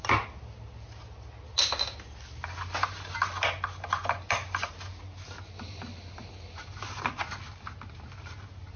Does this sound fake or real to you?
real